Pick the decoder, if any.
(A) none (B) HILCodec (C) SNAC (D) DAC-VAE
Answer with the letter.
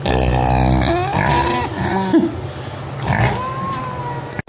A